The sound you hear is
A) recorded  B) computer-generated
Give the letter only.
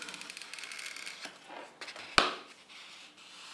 A